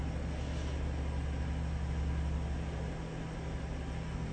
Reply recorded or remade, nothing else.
recorded